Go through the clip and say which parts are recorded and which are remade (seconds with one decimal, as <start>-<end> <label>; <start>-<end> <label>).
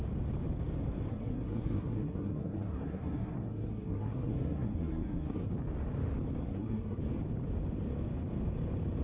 0.0-1.1 recorded; 1.1-5.5 remade; 5.5-6.4 recorded; 6.4-7.0 remade; 7.0-9.0 recorded